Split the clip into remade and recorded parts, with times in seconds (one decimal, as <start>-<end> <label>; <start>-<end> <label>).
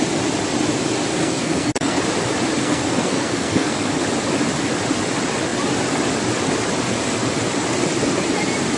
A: 0.0-1.2 recorded; 1.2-2.0 remade; 2.0-2.6 recorded; 2.6-4.0 remade; 4.0-8.8 recorded